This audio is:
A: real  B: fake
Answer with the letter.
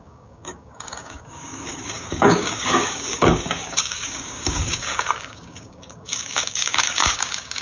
B